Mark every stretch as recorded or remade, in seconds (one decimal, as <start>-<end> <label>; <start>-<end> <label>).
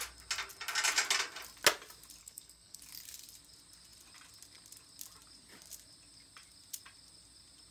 0.0-2.2 recorded; 2.2-2.8 remade; 2.8-7.7 recorded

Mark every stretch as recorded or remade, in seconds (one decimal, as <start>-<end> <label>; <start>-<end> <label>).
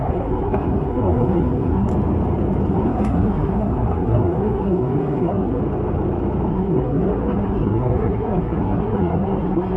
0.0-1.9 remade; 1.9-2.7 recorded; 2.7-5.6 remade; 5.6-6.5 recorded; 6.5-9.8 remade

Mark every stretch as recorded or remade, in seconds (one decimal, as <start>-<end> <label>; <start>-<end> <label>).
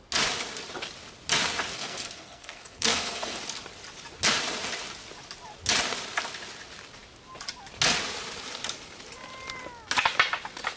0.0-1.7 recorded; 1.7-3.4 remade; 3.4-10.8 recorded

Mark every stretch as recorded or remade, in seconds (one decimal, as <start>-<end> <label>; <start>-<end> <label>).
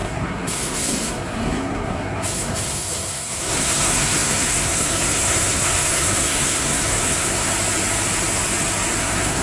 0.0-7.5 remade; 7.5-9.0 recorded; 9.0-9.4 remade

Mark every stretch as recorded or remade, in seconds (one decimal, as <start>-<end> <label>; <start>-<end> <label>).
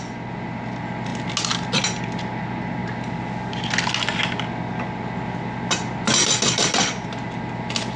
0.0-8.0 recorded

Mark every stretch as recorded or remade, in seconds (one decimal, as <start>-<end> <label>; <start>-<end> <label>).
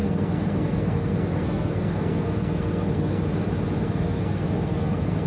0.0-3.2 remade; 3.2-3.8 recorded; 3.8-5.3 remade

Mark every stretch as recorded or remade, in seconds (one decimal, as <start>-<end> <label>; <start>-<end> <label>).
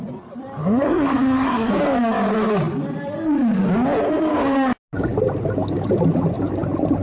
0.0-0.6 recorded; 0.6-1.7 remade; 1.7-7.0 recorded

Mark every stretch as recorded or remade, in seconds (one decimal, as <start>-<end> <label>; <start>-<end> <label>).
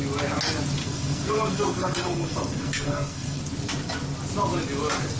0.0-0.8 recorded; 0.8-3.4 remade; 3.4-5.2 recorded